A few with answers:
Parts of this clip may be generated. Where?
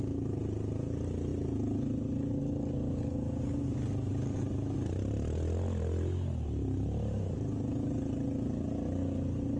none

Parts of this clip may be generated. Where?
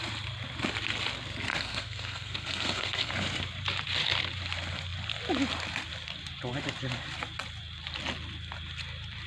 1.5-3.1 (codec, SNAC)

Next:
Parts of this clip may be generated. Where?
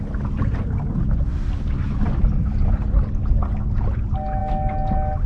none